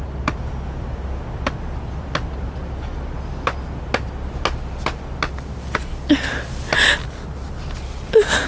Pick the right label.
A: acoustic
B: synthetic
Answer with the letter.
A